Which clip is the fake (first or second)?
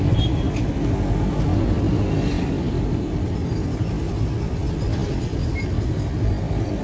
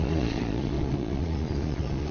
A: second